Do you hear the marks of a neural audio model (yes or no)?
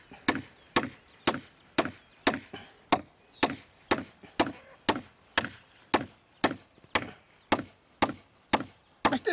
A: no